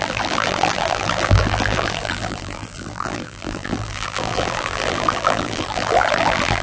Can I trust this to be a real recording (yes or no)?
no